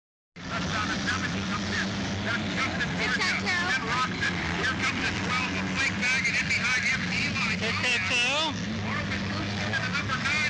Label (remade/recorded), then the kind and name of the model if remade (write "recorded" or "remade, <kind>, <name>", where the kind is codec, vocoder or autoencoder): recorded